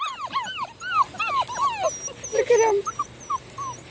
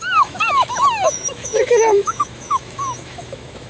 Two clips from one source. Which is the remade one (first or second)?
second